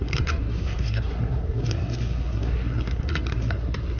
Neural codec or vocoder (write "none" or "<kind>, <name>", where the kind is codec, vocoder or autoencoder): codec, SNAC